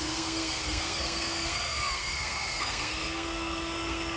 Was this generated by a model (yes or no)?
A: yes